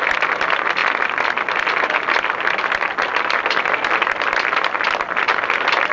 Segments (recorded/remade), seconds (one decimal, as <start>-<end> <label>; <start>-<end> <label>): 0.0-5.9 recorded